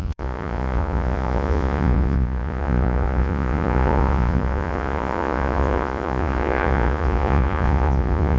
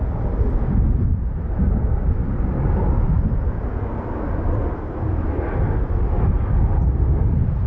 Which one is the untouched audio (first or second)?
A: second